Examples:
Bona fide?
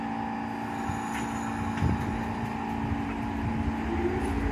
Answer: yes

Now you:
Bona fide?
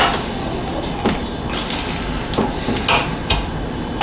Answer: yes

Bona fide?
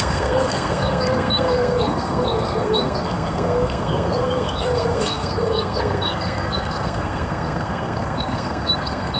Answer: no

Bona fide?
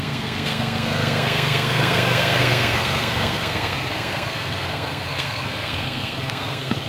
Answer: no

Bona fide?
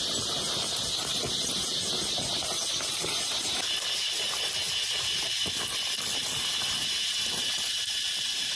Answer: yes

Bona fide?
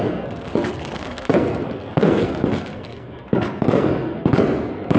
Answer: no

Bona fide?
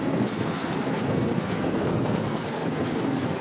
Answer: no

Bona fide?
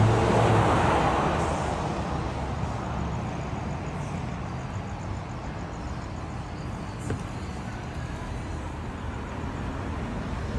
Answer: yes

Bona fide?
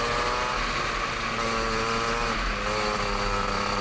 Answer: yes